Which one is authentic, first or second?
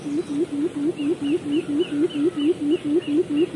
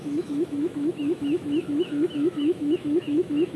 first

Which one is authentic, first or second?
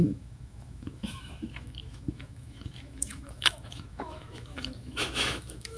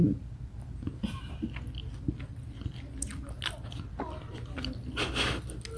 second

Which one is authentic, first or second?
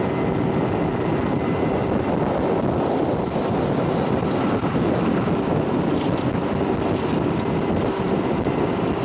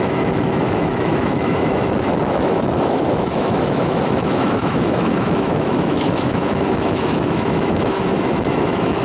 first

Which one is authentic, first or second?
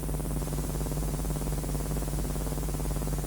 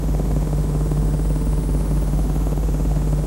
first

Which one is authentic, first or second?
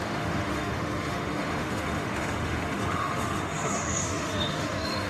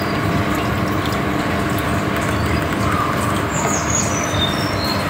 second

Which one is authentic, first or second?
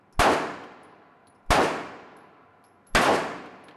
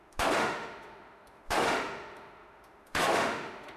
first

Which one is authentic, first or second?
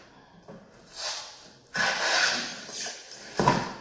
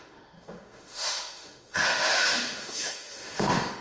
first